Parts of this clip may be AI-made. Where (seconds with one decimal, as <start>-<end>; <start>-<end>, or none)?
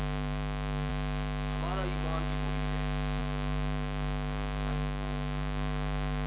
0.0-0.9; 3.2-6.3